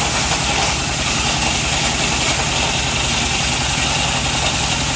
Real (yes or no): yes